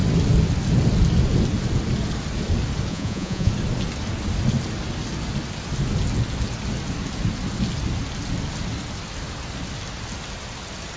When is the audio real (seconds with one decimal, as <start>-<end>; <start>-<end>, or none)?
0.0-2.9; 3.5-11.0